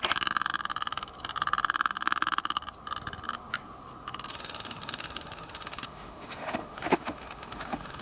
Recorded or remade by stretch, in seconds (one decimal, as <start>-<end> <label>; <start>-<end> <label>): 0.0-4.3 recorded; 4.3-8.0 remade